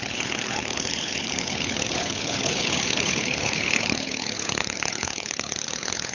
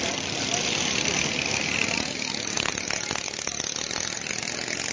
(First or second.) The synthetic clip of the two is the first